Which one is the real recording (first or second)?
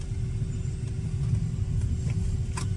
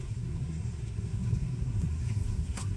first